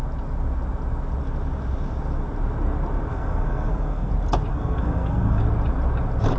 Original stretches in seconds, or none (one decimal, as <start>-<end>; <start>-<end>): 0.0-3.1; 4.1-4.5; 5.4-6.4

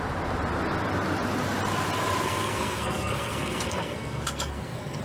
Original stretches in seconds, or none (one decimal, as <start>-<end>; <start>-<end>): 0.0-2.2